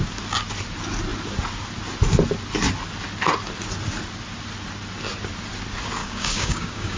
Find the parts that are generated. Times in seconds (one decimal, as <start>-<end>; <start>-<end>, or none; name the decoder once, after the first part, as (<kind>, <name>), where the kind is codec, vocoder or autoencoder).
6.0-7.0 (codec, DAC)